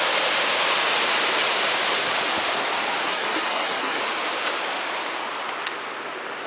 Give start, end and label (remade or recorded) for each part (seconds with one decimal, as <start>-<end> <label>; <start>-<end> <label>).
0.0-3.0 recorded; 3.0-4.0 remade; 4.0-6.5 recorded